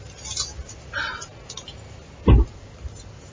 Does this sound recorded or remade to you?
recorded